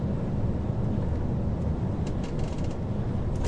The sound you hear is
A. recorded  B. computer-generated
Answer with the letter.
A